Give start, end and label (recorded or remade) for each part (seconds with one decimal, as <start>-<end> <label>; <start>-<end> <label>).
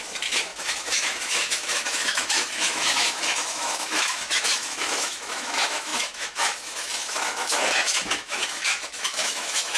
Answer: 0.0-9.8 remade